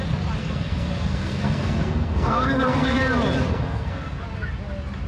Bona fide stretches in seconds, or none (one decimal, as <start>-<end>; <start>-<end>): 0.0-0.4; 3.0-3.5; 4.2-5.1